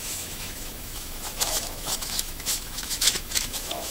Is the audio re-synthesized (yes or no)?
yes